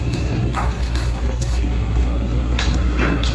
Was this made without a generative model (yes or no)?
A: no